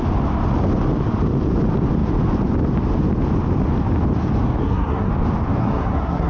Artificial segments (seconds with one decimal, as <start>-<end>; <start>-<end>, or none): 4.6-5.1; 5.6-6.3